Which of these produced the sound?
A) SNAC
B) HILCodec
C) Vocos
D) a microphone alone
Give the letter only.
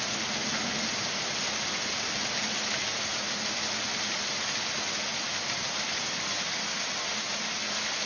D